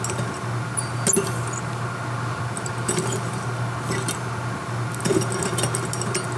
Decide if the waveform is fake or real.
real